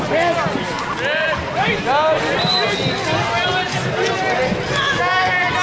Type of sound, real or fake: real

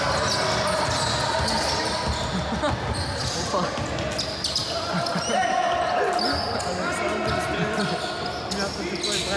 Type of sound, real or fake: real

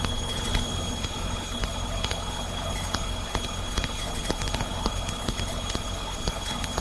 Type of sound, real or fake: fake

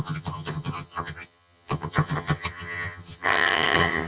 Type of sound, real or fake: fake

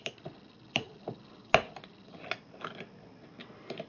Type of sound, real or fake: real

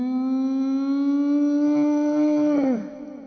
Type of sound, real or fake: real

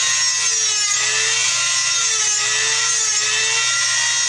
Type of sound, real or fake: real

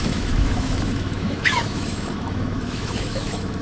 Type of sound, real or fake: fake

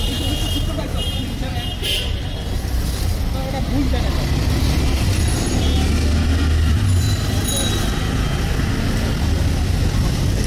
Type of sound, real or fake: real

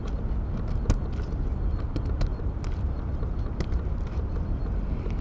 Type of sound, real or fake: real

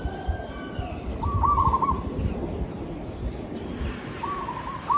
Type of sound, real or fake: fake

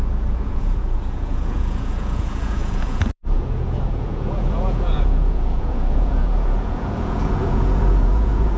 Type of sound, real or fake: fake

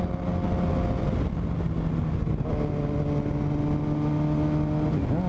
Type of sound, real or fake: real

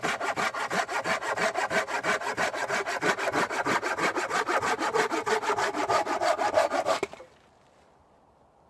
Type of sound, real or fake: real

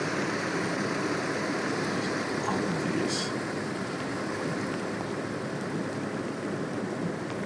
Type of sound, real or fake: real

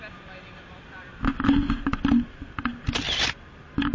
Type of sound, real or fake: real